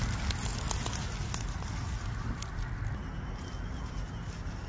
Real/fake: real